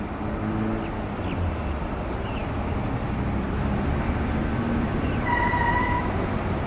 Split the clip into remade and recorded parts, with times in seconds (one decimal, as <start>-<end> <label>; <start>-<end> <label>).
0.0-6.7 recorded